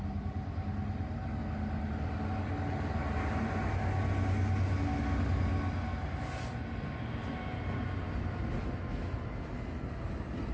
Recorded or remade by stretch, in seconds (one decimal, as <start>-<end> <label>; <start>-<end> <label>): 0.0-10.5 recorded